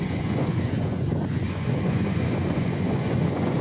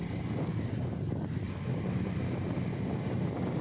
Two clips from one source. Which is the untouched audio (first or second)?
second